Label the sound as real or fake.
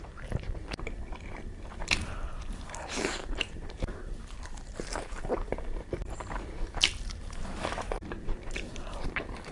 fake